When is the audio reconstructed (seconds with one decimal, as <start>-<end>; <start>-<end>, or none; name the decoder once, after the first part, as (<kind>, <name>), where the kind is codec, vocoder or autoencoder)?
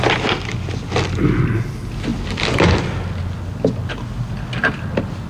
none